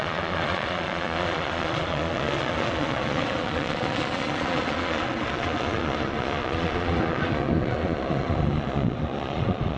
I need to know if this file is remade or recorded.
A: remade